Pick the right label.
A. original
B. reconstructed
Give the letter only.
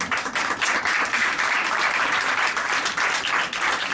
A